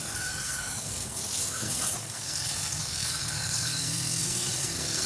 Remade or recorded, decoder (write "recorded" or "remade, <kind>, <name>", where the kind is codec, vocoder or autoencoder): remade, codec, SNAC